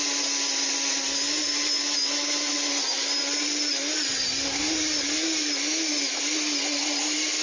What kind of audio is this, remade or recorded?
recorded